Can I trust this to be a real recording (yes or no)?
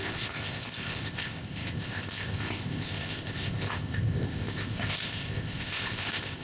no